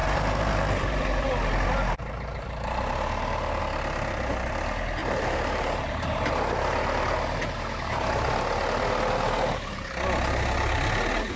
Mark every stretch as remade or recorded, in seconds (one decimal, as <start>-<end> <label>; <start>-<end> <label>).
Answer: 0.0-3.6 remade; 3.6-5.0 recorded; 5.0-6.3 remade; 6.3-11.4 recorded